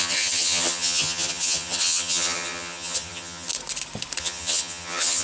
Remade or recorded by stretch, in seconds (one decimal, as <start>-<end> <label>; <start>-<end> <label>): 0.0-3.5 remade; 3.5-4.2 recorded; 4.2-5.2 remade

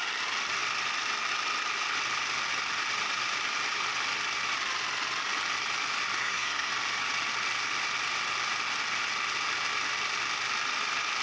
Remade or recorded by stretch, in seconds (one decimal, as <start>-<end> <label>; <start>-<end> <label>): 0.0-6.2 recorded; 6.2-6.7 remade; 6.7-11.2 recorded